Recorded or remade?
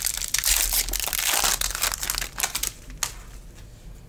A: recorded